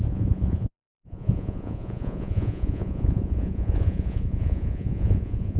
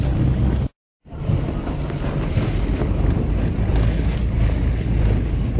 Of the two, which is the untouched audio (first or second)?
second